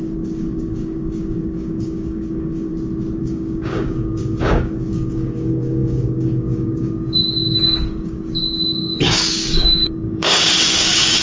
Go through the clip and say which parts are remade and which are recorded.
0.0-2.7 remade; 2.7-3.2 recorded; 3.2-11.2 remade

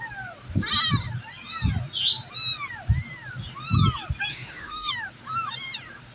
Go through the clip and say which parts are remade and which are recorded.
0.0-4.3 recorded; 4.3-4.9 remade; 4.9-6.1 recorded

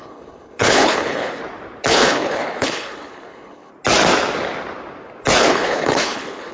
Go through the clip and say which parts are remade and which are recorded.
0.0-1.4 remade; 1.4-1.9 recorded; 1.9-3.7 remade; 3.7-5.4 recorded; 5.4-6.5 remade

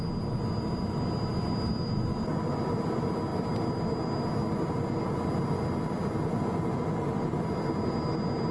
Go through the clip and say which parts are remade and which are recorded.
0.0-8.5 recorded